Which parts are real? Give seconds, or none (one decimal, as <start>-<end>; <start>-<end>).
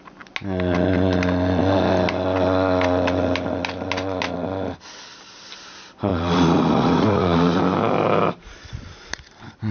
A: 0.0-6.1; 7.6-9.7